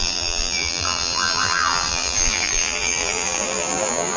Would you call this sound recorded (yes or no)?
no